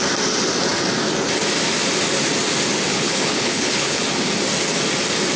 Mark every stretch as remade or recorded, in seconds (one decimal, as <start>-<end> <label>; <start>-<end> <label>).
0.0-2.9 recorded; 2.9-4.0 remade; 4.0-5.4 recorded